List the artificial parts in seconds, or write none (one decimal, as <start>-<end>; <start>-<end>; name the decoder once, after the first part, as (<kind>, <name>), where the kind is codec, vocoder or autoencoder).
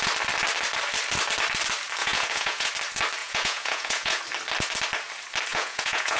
2.0-2.7 (vocoder, Vocos); 3.2-4.2; 5.5-6.2